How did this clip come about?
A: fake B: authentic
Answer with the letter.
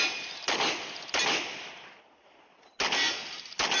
B